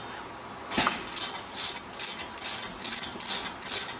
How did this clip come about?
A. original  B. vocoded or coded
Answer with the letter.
A